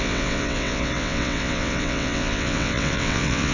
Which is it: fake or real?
fake